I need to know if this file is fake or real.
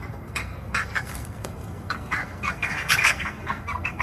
fake